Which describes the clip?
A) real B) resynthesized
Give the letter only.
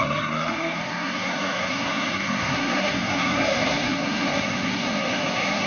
B